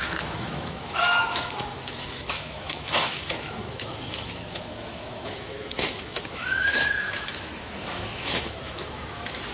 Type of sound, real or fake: fake